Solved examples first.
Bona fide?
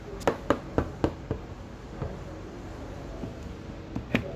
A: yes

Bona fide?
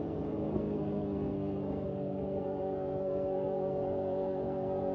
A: no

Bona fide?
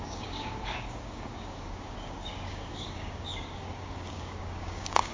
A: no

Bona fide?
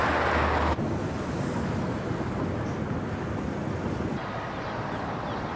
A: yes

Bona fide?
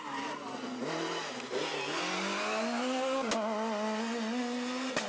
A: yes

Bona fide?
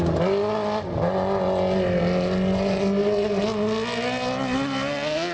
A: yes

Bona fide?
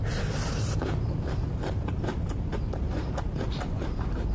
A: no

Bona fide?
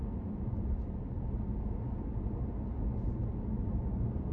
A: yes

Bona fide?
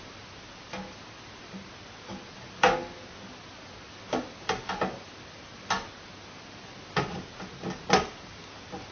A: yes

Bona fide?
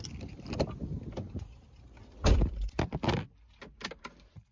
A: yes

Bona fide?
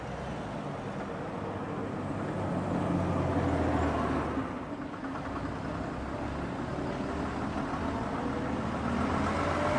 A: yes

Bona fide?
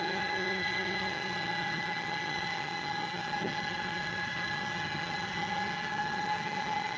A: no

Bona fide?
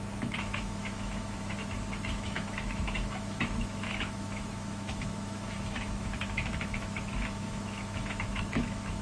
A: no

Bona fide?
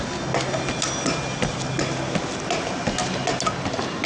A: yes